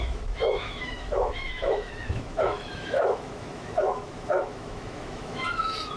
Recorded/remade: remade